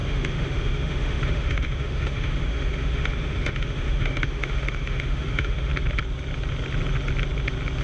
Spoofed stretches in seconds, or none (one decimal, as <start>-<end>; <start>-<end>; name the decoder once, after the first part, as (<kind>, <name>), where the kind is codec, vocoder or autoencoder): 0.0-5.7 (autoencoder, DAC-VAE)